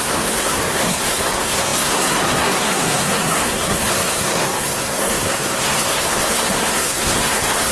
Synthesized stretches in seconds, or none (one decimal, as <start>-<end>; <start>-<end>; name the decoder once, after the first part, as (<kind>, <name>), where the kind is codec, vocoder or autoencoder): 0.0-7.7 (codec, SNAC)